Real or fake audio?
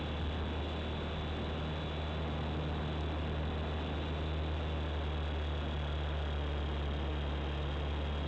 real